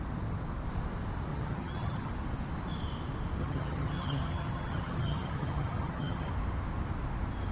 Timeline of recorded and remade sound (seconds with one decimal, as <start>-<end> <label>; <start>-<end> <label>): 0.0-1.3 recorded; 1.3-2.1 remade; 2.1-3.4 recorded; 3.4-6.3 remade; 6.3-7.5 recorded